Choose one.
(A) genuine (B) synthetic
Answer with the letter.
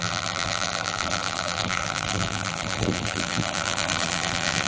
B